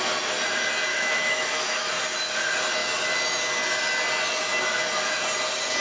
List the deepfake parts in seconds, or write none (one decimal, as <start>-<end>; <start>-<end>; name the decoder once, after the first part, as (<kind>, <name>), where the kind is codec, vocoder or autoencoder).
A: 0.9-1.9 (autoencoder, DAC-VAE)